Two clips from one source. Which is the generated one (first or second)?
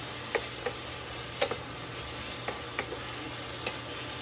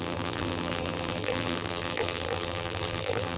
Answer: second